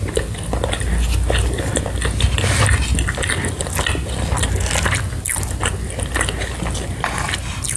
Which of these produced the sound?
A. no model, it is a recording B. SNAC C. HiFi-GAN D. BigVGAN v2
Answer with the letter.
A